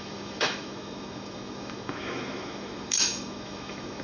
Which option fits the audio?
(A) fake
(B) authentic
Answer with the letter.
A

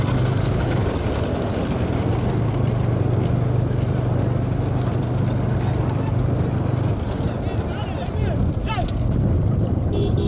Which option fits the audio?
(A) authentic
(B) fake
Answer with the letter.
A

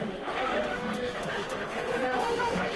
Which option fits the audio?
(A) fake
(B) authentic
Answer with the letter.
A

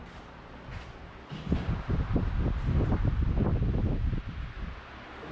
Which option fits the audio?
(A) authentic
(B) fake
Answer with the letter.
A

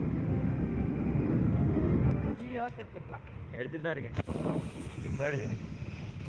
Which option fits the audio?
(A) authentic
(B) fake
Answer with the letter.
B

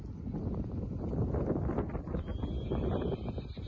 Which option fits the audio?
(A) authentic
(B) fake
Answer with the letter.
A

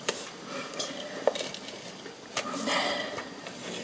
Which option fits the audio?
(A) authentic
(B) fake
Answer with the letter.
A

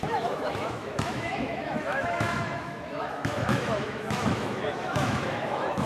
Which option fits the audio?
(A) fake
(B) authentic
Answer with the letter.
A